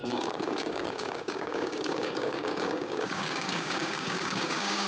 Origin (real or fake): fake